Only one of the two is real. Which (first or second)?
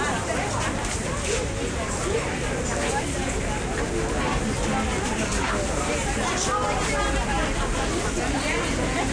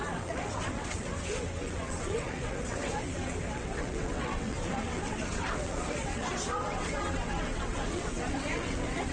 first